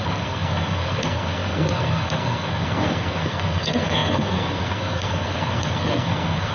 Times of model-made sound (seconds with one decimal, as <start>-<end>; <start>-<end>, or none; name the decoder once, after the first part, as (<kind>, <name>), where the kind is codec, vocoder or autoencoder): 0.0-6.5 (codec, SNAC)